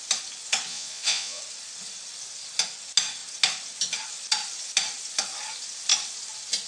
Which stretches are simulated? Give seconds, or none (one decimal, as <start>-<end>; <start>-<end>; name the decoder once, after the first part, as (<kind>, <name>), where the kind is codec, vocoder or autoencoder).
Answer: 0.7-1.4 (vocoder, Vocos)

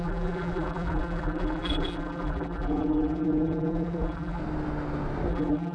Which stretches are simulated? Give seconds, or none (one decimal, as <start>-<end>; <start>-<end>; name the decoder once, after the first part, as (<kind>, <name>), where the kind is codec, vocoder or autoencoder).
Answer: 0.0-4.4 (vocoder, BigVGAN v2); 5.3-5.7

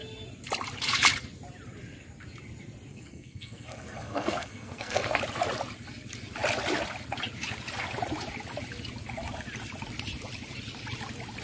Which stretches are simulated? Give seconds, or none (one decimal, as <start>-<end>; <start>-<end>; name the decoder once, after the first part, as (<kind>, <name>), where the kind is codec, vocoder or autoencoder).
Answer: 2.9-5.2 (codec, SNAC)

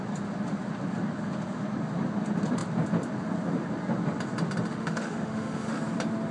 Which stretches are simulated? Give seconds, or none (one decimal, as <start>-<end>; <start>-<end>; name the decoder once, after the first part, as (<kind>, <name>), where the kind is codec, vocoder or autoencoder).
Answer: 4.7-5.7 (autoencoder, DAC-VAE)